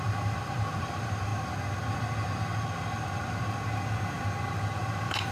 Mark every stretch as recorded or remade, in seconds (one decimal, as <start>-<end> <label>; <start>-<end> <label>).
0.0-1.3 remade; 1.3-4.5 recorded; 4.5-5.3 remade